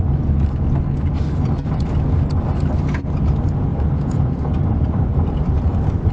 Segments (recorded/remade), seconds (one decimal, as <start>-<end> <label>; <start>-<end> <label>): 0.0-3.7 recorded; 3.7-6.1 remade